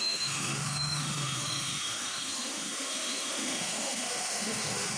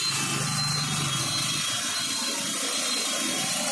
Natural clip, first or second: second